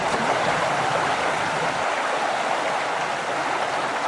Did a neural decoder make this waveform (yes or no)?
no